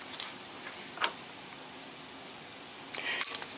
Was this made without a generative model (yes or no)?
yes